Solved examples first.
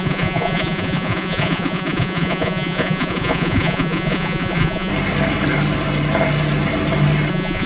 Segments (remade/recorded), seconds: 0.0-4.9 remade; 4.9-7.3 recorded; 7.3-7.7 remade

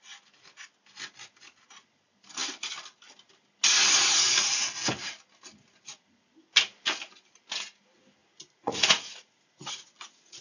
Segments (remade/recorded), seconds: 0.0-8.2 recorded; 8.2-10.4 remade